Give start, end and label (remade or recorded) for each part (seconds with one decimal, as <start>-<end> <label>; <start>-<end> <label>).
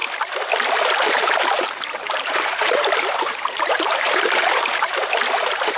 0.0-5.8 remade